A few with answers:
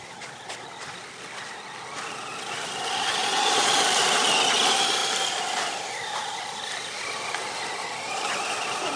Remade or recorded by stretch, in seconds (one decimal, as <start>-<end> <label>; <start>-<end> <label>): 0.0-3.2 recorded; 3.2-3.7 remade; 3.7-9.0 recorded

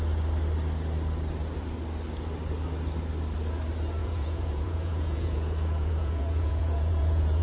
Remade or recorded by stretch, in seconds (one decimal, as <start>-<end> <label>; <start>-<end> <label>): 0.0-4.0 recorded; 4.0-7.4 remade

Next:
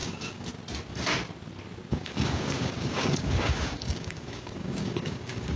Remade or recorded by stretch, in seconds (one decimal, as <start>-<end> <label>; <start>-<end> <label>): 0.0-0.5 remade; 0.5-1.9 recorded; 1.9-5.6 remade